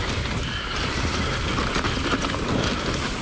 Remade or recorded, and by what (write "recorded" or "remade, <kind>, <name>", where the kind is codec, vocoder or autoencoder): recorded